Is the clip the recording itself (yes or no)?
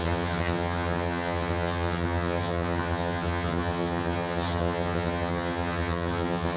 no